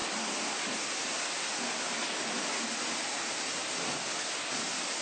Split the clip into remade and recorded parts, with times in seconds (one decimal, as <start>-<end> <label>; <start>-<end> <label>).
0.0-5.0 recorded